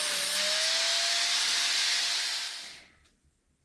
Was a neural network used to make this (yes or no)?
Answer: no